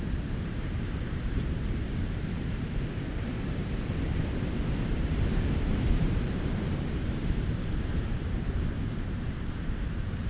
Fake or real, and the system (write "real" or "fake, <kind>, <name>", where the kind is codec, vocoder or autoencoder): fake, vocoder, BigVGAN v2